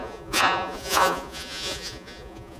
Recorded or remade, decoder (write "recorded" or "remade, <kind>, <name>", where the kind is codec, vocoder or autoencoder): remade, vocoder, Vocos